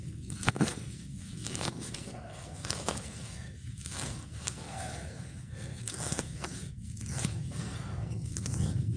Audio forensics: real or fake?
fake